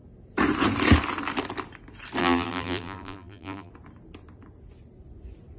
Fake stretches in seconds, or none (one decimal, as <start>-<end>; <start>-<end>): 2.2-3.7